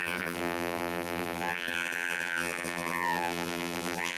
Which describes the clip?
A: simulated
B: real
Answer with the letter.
A